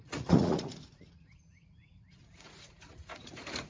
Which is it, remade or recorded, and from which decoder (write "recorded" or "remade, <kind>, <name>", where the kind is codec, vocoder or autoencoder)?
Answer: remade, vocoder, Vocos